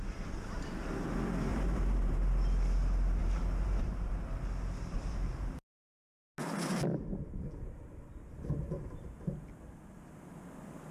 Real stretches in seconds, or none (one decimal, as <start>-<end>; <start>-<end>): 0.0-1.5; 2.2-3.2; 5.7-10.9